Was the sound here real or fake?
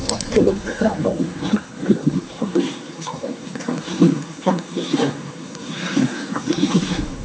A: fake